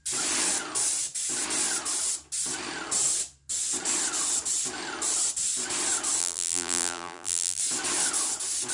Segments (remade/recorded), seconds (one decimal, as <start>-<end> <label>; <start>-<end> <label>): 0.0-6.2 recorded; 6.2-7.6 remade; 7.6-8.7 recorded